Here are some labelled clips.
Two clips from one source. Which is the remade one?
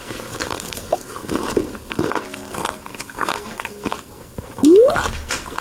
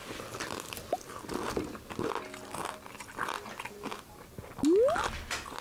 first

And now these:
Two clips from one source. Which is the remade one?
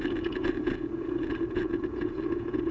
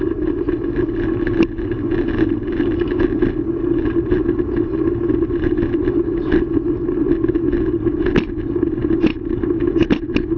first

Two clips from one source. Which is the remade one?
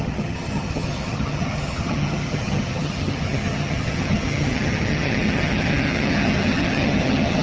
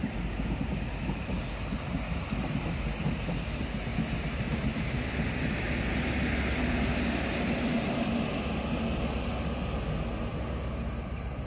first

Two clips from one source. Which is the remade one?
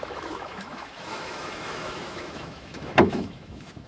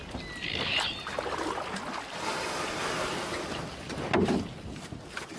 first